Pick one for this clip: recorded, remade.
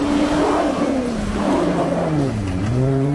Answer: remade